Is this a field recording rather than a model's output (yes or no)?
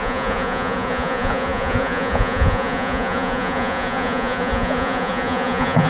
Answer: no